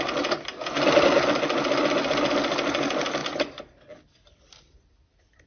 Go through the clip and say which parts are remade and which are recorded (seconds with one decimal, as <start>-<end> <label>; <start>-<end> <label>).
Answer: 0.0-5.5 recorded